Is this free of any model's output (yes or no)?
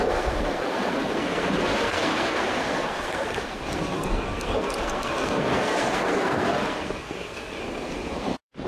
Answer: no